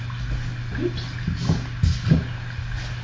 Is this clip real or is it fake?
real